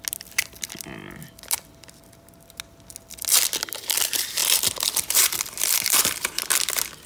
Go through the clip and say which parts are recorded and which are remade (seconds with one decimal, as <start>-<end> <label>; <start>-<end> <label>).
0.0-7.1 recorded